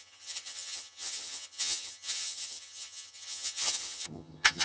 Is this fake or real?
fake